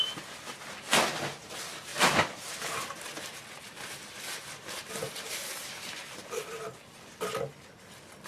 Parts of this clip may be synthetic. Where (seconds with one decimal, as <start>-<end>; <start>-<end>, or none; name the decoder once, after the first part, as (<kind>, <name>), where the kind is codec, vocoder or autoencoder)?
1.9-6.1 (vocoder, BigVGAN v2); 6.8-7.7